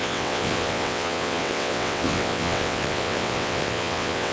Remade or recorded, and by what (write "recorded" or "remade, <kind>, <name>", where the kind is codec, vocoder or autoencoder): remade, vocoder, WaveNeXt